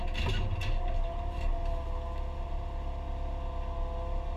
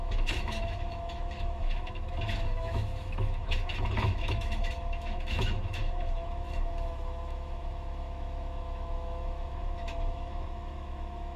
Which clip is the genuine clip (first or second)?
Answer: first